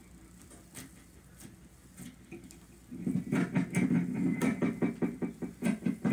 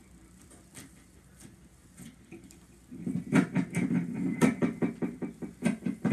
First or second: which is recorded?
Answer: first